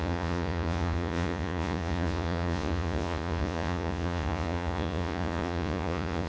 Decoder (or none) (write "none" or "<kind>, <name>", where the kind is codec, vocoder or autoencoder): vocoder, Vocos